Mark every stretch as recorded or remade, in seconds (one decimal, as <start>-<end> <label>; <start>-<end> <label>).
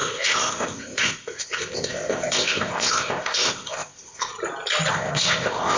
0.0-4.3 remade; 4.3-4.9 recorded; 4.9-5.8 remade